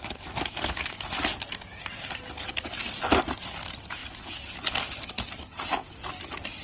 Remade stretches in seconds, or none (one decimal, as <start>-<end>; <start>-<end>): none